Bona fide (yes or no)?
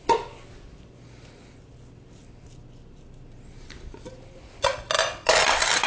yes